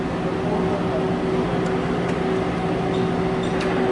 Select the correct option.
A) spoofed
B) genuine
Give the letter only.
B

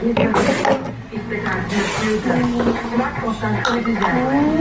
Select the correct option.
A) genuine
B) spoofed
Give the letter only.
A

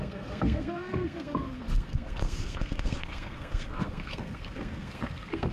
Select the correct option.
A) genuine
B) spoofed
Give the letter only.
B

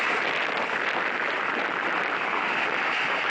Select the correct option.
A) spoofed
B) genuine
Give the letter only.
B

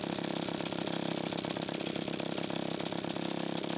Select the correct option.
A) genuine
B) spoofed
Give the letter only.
A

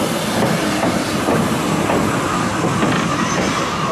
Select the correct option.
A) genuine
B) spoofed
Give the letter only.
A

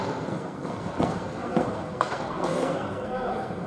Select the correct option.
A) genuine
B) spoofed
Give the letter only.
B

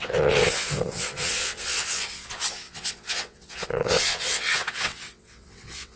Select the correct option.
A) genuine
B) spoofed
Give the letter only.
B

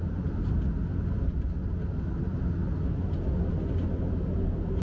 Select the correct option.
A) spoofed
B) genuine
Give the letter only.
B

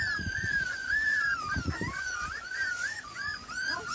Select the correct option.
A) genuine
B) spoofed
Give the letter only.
B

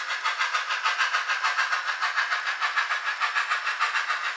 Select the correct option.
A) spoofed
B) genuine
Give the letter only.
B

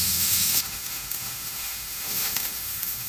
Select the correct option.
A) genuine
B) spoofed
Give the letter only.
B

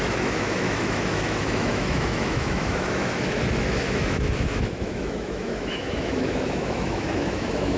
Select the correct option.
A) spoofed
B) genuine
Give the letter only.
A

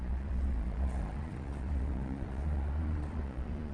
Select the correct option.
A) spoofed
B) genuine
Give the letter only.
A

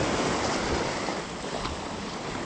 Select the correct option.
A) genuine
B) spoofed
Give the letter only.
A